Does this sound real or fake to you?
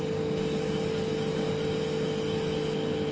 real